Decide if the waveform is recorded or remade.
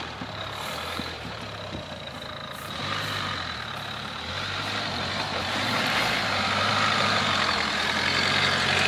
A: remade